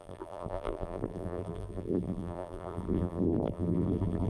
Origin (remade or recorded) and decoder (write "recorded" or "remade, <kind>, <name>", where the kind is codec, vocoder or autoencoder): remade, vocoder, BigVGAN v2